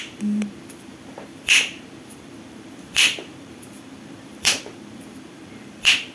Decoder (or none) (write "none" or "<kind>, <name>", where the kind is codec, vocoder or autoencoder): vocoder, BigVGAN v2